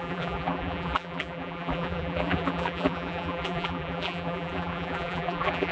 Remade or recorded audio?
remade